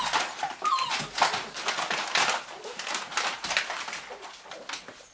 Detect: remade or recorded recorded